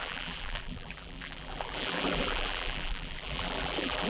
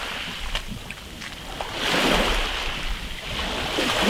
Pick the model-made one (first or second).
first